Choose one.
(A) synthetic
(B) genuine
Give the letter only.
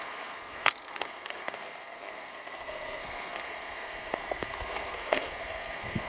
A